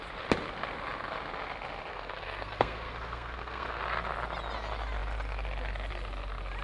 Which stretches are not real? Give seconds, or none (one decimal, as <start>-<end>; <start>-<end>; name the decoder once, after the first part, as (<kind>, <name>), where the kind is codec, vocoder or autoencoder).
1.9-3.8 (codec, SNAC)